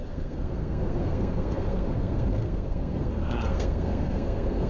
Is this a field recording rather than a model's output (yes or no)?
no